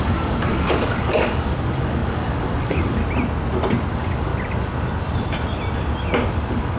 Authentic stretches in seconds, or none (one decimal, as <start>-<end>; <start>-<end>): 3.0-3.9; 4.3-6.3